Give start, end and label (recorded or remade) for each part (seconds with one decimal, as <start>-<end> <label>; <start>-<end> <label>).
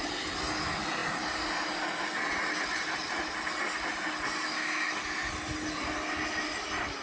0.0-7.0 recorded